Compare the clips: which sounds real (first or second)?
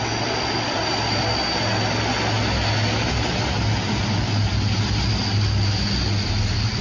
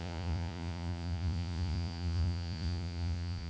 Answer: first